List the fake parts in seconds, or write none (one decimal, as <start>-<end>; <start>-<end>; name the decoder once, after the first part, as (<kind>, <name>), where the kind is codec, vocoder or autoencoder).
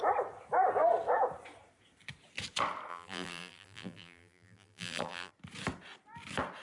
2.9-5.3 (vocoder, BigVGAN v2)